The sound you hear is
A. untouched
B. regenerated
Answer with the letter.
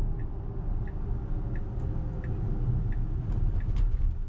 A